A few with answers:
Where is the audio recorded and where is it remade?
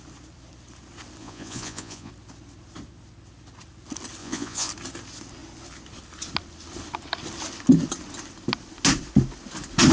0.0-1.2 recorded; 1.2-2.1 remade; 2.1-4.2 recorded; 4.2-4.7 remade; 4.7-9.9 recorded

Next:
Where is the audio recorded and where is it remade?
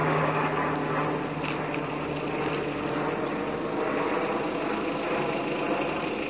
0.0-0.5 remade; 0.5-6.3 recorded